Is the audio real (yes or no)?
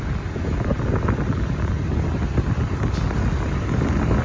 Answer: yes